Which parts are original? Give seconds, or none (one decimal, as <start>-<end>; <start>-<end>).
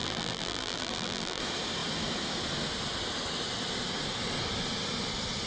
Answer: 1.4-5.5